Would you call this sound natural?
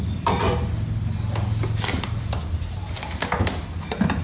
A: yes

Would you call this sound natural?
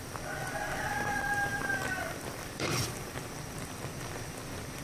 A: no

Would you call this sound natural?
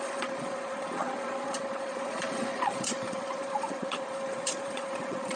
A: no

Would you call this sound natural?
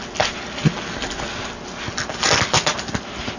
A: yes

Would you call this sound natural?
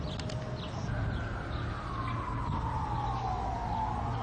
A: yes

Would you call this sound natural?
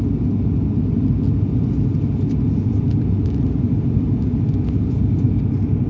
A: yes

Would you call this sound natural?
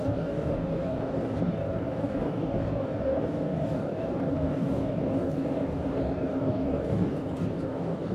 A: no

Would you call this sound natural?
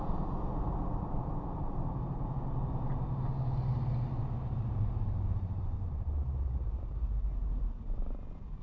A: yes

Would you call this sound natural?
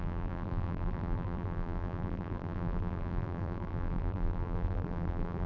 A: no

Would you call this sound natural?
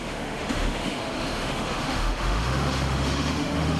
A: no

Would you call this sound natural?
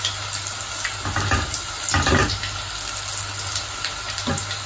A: yes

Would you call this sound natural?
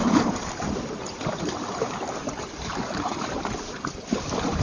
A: no